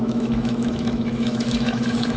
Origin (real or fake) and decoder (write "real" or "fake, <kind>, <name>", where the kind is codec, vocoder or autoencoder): fake, autoencoder, DAC-VAE